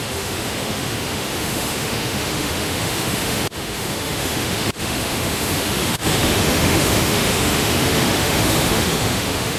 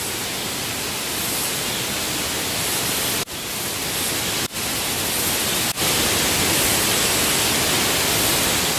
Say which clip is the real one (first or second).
second